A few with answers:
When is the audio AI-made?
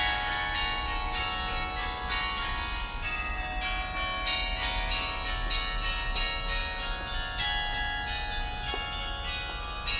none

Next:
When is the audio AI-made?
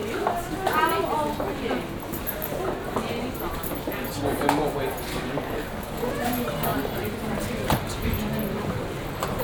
5.1-6.1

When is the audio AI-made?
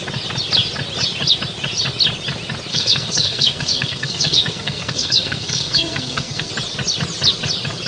2.7-6.5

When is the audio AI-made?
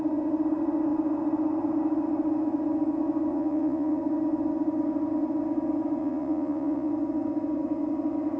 3.3-4.0; 6.0-6.9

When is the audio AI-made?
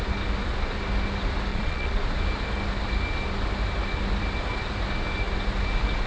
1.5-2.0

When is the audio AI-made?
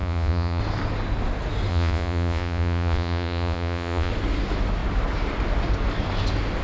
0.0-0.6; 1.7-4.1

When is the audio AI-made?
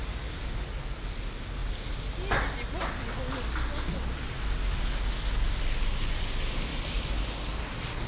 none